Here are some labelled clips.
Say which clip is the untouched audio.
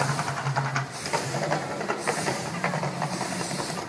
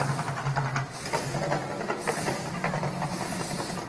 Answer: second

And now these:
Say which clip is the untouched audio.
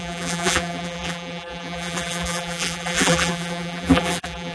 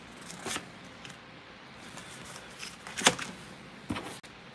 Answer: second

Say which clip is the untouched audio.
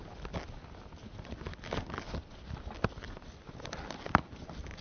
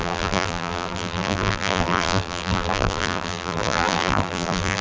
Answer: first